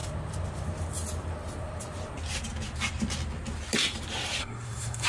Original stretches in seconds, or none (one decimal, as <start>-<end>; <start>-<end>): 0.0-4.4